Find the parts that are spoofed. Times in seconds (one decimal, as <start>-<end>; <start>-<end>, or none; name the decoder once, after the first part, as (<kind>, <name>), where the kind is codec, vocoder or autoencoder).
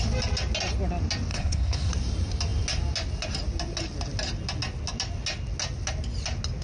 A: 1.3-1.9 (codec, SNAC)